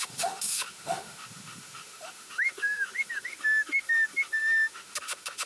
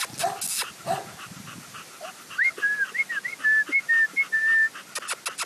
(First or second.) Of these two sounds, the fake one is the first